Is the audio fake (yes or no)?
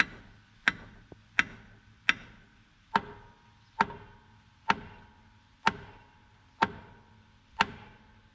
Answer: no